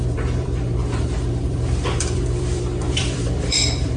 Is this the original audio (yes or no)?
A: no